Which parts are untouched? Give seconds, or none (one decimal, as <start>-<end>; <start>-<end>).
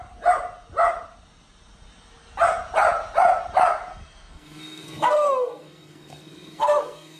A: 0.0-3.9